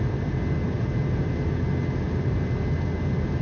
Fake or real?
real